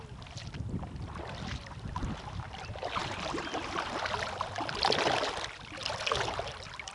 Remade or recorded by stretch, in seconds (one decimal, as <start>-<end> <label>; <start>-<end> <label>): 0.0-6.9 recorded